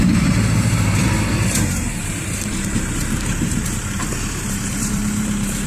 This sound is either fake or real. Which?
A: fake